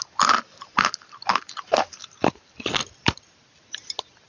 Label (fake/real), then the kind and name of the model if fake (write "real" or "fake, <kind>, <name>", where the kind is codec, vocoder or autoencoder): real